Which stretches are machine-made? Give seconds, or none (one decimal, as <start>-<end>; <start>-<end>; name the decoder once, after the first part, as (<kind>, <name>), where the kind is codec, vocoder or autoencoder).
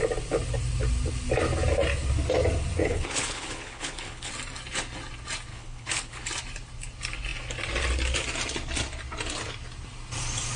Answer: 2.8-4.3 (codec, HILCodec); 5.5-6.3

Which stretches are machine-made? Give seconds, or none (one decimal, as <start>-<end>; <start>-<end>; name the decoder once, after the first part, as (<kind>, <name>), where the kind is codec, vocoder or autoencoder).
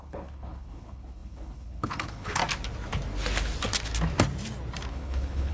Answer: 0.0-2.4 (codec, HILCodec); 4.9-5.5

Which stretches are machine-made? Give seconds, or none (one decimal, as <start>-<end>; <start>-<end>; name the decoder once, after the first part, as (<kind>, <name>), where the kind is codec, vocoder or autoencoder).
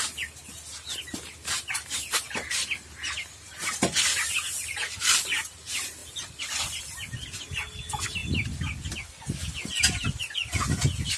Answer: none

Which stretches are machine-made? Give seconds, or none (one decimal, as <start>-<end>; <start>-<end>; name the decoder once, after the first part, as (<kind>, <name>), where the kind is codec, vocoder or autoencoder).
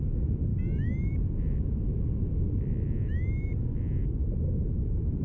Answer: none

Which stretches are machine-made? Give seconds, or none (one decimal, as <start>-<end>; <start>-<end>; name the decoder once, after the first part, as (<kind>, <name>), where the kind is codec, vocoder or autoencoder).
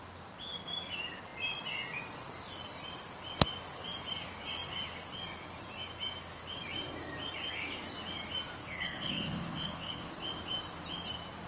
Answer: 8.6-10.1 (codec, HILCodec)